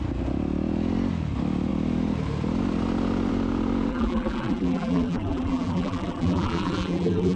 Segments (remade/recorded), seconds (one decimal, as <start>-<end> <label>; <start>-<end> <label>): 0.0-3.9 recorded; 3.9-7.4 remade